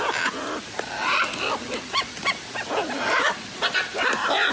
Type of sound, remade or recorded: recorded